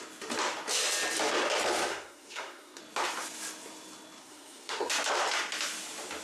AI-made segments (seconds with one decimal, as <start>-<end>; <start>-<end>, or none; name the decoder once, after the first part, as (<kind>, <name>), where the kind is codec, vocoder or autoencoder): 1.9-2.8 (codec, SNAC); 4.2-4.9